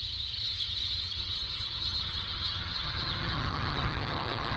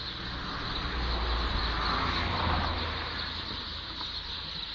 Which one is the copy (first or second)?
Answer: first